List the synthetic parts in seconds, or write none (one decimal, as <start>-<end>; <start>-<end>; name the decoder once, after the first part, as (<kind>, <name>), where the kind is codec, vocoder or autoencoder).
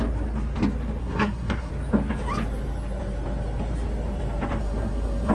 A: 1.0-1.7 (codec, SNAC); 4.6-5.3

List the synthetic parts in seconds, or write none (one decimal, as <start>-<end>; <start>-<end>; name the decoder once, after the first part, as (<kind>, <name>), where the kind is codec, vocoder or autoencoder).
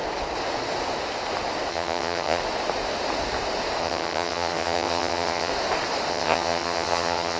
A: 1.7-2.4 (vocoder, HiFi-GAN); 3.8-5.5; 6.1-7.4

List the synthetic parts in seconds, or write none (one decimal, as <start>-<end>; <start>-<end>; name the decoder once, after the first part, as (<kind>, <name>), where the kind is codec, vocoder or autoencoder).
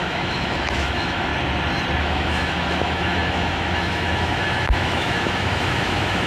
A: 0.0-1.3 (autoencoder, DAC-VAE); 2.0-6.3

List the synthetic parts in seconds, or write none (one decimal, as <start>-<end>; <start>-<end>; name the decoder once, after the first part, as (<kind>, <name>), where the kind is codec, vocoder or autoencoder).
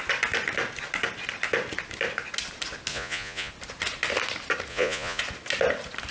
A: 2.9-3.5 (vocoder, Vocos); 4.7-5.2